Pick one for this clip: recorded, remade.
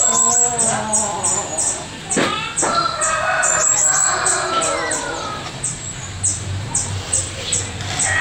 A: recorded